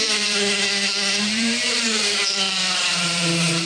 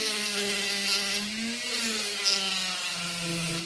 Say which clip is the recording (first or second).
second